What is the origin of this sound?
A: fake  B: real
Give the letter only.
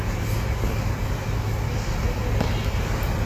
B